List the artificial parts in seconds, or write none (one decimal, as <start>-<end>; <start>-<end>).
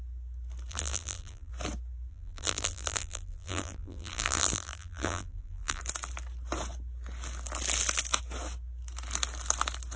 0.7-1.5; 2.1-5.8